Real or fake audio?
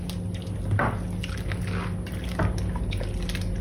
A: real